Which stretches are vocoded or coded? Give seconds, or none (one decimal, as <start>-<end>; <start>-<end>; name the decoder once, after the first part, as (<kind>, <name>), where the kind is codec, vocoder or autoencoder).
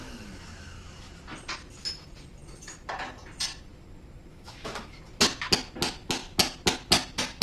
0.0-1.1 (autoencoder, DAC-VAE); 4.3-5.0